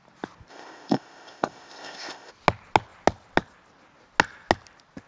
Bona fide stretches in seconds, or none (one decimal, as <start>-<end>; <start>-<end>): 0.0-0.5; 2.3-5.1